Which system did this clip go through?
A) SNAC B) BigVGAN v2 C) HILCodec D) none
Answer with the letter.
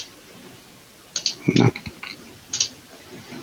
D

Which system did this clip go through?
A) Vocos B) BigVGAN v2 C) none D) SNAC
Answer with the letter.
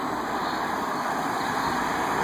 C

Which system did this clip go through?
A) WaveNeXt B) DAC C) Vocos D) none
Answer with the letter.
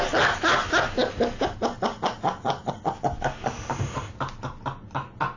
D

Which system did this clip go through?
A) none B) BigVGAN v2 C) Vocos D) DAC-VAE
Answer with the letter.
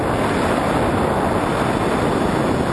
A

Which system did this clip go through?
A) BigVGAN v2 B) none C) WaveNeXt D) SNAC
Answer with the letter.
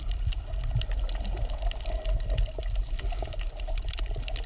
B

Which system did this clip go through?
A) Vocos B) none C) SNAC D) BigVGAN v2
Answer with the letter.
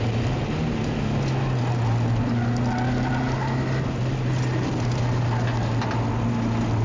B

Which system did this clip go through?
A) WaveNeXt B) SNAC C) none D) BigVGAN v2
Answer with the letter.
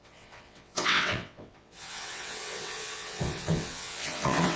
A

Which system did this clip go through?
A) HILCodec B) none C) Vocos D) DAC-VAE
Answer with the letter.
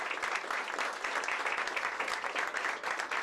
B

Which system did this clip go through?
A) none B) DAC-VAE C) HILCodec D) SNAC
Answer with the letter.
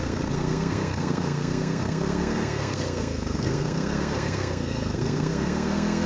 D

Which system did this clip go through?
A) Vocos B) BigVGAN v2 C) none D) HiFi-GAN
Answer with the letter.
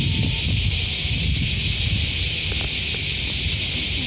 C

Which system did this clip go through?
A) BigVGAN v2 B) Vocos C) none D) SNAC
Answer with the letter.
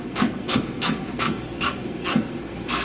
D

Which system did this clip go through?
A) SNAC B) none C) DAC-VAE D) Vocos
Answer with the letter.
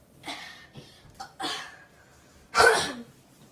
B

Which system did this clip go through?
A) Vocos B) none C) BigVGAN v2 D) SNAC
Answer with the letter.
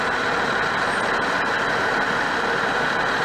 B